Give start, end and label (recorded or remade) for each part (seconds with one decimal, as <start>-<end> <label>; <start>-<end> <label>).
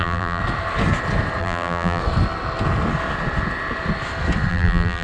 0.0-0.4 remade; 0.4-1.4 recorded; 1.4-2.0 remade; 2.0-4.5 recorded; 4.5-5.0 remade